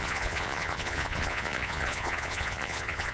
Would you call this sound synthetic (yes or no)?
yes